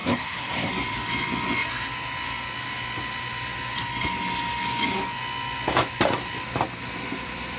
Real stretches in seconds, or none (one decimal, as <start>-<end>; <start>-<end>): 0.7-7.6